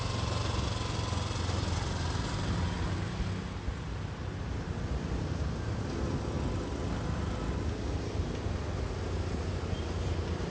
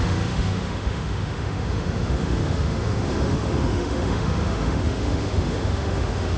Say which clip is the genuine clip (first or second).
first